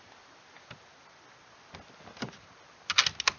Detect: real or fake real